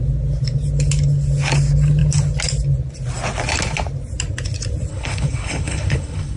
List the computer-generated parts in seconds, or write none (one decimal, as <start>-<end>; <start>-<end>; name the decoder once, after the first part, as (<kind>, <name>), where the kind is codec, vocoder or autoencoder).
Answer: 4.9-6.4 (codec, HILCodec)